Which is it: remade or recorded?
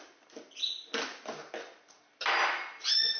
recorded